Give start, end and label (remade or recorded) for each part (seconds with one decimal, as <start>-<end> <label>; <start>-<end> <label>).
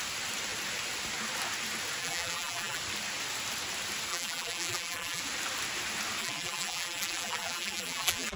0.0-2.0 recorded; 2.0-2.8 remade; 2.8-4.1 recorded; 4.1-5.2 remade; 5.2-6.2 recorded; 6.2-8.4 remade